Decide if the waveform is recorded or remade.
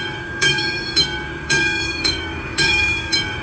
remade